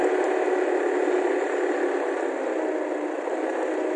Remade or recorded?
recorded